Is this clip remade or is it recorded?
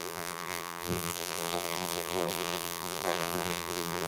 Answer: remade